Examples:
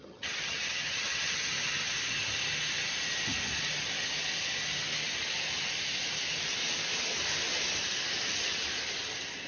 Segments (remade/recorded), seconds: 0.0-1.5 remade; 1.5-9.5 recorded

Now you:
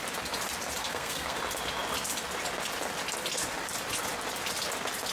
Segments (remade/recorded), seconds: 0.0-0.8 recorded; 0.8-1.4 remade; 1.4-5.1 recorded